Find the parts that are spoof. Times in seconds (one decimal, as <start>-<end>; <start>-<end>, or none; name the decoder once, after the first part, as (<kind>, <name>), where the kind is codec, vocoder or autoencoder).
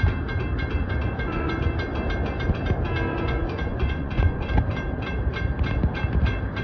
0.8-1.5 (vocoder, Vocos); 3.1-4.5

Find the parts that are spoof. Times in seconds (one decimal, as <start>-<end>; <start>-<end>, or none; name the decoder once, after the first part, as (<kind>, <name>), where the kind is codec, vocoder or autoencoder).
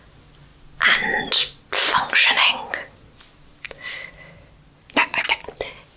none